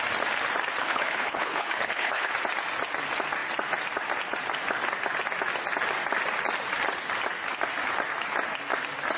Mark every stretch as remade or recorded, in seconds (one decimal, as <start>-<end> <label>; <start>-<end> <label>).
0.0-0.8 recorded; 0.8-2.3 remade; 2.3-9.2 recorded